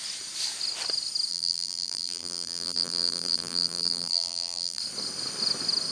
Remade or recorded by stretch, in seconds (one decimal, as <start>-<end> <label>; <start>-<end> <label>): 0.0-1.3 recorded; 1.3-4.8 remade; 4.8-5.9 recorded